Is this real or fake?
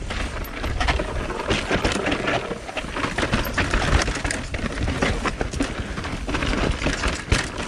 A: real